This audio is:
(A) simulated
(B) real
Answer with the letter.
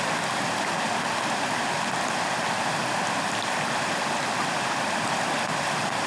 B